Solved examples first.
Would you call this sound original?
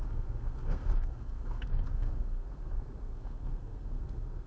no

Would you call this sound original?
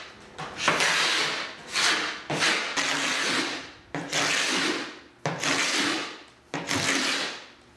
yes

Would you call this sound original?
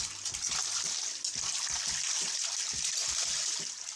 yes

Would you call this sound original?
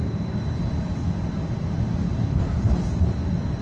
yes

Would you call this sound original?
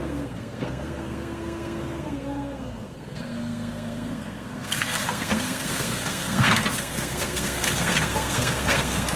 no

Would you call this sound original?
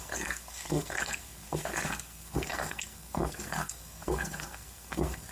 no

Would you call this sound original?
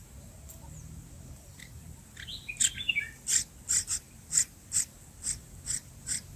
yes